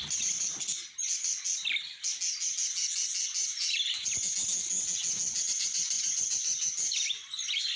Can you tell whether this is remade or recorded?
recorded